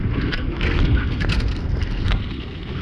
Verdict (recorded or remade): remade